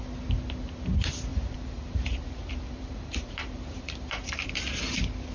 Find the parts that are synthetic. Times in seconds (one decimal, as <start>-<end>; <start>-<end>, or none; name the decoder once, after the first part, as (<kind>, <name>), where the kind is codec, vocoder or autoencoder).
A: 1.3-4.5 (vocoder, BigVGAN v2)

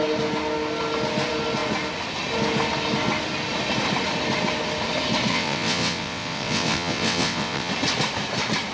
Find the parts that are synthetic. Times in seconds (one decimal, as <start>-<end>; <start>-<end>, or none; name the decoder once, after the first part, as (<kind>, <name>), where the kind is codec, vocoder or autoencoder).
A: 5.3-7.7 (vocoder, WaveNeXt)

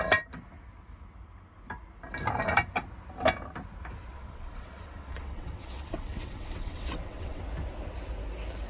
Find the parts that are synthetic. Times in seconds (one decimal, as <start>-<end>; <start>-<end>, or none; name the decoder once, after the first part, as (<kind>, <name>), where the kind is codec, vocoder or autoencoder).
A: 4.1-7.4 (vocoder, WaveNeXt)

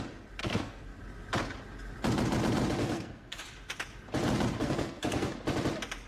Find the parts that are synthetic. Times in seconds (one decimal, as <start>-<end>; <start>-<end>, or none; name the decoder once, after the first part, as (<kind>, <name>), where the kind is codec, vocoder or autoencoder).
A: 0.4-1.0 (codec, SNAC); 2.8-3.4; 4.6-5.3

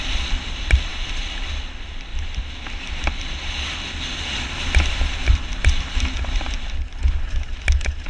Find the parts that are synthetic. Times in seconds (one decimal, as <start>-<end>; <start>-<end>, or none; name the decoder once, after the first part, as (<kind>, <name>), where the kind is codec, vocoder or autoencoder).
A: none

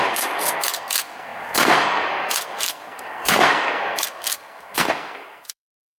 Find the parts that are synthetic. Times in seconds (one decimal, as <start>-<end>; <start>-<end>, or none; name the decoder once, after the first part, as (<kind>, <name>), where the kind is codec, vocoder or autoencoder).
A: 0.0-6.0 (codec, SNAC)

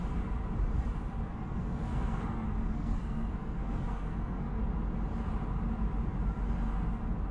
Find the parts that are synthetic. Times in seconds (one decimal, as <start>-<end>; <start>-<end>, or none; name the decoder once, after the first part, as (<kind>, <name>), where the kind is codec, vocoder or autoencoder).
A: 1.3-4.6 (codec, SNAC)

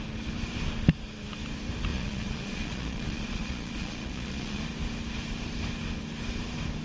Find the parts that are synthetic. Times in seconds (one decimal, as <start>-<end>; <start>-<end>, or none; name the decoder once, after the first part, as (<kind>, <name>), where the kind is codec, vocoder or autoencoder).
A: 1.9-4.6 (vocoder, Vocos)